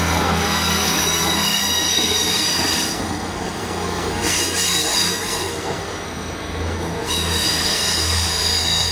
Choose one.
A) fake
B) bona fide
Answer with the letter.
A